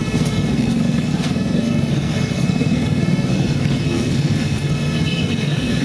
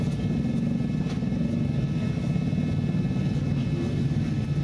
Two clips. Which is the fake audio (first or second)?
first